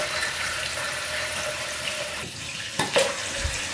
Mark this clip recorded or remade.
remade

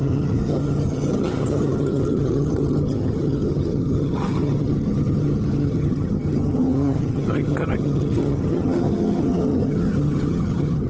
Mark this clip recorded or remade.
remade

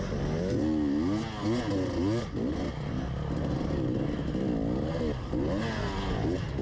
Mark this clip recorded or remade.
recorded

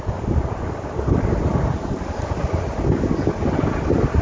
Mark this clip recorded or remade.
recorded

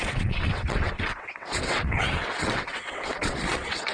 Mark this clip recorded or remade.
remade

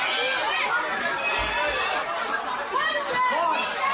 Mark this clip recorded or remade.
recorded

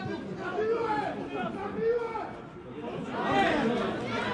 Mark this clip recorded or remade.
recorded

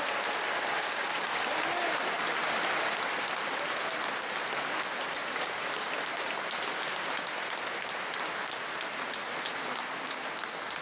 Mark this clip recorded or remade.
recorded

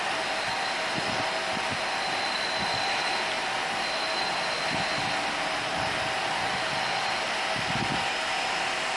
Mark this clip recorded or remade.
recorded